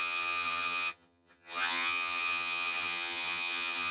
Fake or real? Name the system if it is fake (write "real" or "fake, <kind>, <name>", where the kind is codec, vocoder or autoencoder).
fake, vocoder, HiFi-GAN